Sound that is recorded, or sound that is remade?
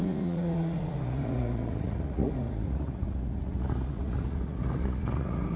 remade